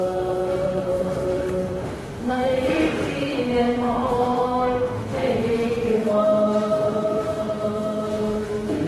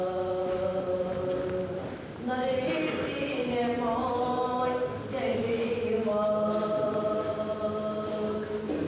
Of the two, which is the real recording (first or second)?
second